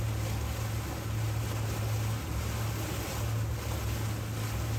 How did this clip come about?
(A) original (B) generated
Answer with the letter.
A